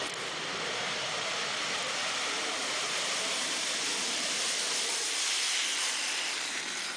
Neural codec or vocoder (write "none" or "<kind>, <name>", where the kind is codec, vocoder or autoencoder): vocoder, BigVGAN v2